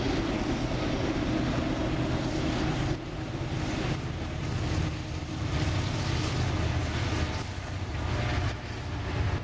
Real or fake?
real